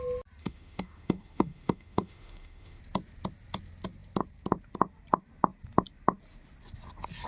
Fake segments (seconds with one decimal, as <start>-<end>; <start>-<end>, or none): 0.4-2.8